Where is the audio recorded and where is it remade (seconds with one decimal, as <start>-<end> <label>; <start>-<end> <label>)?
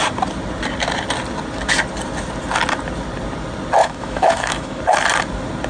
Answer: 0.0-3.8 recorded; 3.8-4.8 remade; 4.8-5.7 recorded